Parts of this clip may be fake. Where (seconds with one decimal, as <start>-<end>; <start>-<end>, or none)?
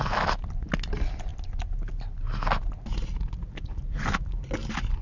none